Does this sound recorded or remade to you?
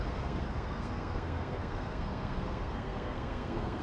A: remade